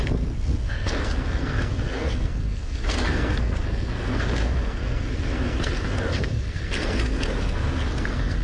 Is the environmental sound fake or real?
fake